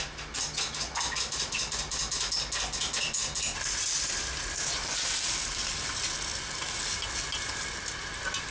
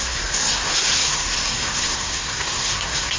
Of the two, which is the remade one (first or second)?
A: second